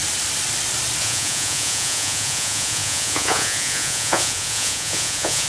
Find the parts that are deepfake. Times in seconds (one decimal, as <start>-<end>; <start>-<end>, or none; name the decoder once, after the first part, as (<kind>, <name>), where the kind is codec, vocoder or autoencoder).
1.0-5.5 (vocoder, Vocos)